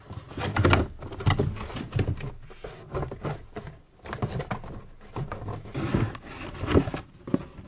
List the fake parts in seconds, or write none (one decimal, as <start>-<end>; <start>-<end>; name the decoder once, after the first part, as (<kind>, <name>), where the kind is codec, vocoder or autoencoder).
none

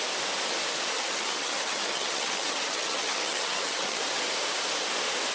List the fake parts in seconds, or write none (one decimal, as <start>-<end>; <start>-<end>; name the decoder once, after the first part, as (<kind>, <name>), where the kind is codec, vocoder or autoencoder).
0.9-4.0 (vocoder, HiFi-GAN)

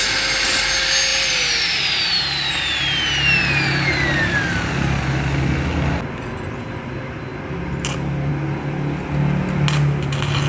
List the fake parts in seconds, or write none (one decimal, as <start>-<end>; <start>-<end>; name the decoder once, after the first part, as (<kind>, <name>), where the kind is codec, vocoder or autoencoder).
none